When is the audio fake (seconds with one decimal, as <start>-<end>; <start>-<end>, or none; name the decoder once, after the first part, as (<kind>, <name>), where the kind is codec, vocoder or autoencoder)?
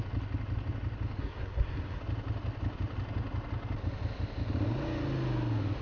1.2-2.0 (codec, SNAC)